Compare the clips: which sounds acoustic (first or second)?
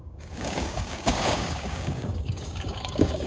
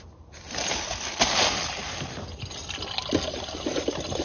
second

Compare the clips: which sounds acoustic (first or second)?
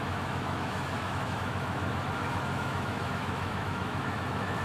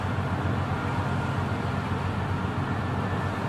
second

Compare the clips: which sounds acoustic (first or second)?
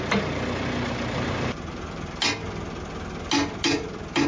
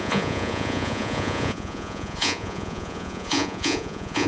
first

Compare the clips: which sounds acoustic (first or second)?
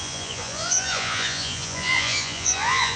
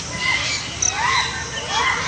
second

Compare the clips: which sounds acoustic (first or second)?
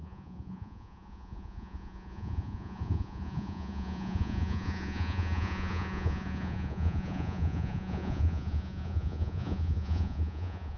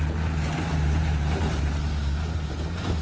second